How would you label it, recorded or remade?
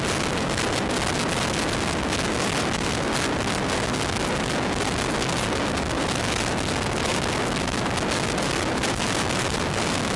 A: recorded